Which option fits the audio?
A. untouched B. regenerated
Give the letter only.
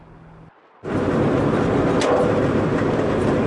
A